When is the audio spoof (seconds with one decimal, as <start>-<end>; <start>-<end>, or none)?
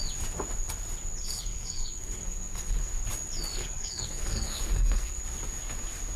1.2-2.9; 3.5-5.2